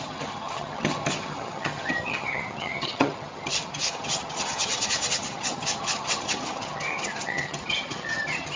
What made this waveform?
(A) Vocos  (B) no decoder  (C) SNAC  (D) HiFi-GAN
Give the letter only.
D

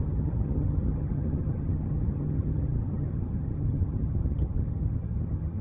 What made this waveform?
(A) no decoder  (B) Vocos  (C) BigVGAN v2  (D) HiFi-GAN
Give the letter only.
D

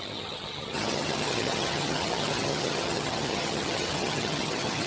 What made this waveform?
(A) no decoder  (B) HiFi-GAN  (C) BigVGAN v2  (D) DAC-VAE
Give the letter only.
B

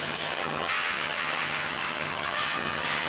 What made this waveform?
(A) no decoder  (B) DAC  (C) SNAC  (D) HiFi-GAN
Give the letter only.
D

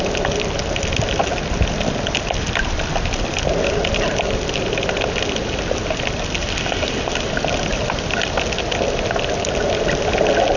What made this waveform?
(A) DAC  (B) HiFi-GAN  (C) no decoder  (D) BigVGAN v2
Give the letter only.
C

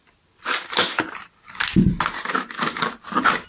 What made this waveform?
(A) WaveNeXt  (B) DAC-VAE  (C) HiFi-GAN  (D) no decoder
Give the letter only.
D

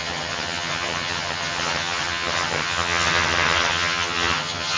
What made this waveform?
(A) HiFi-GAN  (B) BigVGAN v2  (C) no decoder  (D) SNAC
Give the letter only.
A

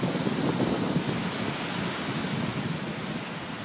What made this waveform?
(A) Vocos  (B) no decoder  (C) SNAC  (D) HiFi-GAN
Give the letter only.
B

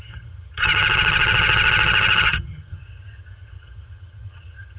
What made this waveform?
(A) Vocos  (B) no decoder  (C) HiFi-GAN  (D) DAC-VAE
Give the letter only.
C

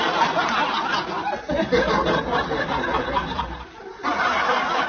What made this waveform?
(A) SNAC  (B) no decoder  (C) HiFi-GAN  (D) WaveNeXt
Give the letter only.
B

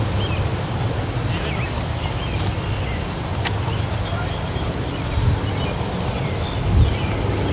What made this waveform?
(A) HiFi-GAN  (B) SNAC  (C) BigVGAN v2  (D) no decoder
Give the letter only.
D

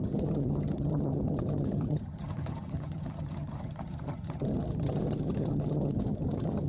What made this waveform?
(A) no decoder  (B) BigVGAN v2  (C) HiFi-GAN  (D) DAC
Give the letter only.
C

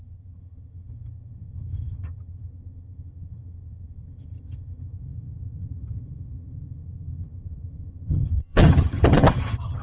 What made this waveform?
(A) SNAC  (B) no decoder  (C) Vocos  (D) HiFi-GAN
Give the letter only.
D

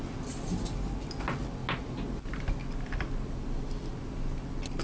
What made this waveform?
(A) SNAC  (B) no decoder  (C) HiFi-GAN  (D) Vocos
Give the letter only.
B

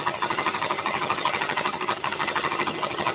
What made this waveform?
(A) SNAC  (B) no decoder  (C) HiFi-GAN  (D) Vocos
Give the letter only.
C